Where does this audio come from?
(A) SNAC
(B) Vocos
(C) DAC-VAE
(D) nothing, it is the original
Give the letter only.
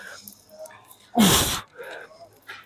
D